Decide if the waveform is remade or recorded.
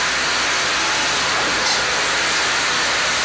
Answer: recorded